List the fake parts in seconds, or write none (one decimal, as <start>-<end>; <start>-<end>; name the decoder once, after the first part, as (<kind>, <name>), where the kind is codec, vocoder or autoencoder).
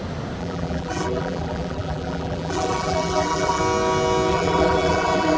0.4-3.6 (vocoder, BigVGAN v2); 4.3-5.4